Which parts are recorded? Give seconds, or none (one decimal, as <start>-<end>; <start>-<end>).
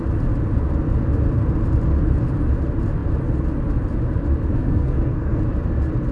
0.0-4.5; 5.4-6.1